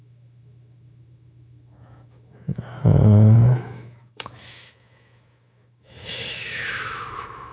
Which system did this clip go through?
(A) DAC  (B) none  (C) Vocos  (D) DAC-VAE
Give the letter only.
D